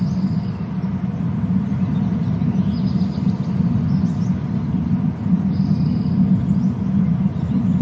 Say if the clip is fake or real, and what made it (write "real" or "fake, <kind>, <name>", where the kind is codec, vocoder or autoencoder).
real